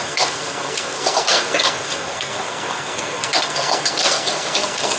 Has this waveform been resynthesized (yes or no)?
yes